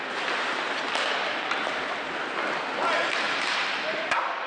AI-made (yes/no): no